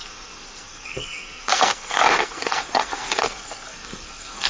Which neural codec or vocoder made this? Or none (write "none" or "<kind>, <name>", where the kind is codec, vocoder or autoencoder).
codec, SNAC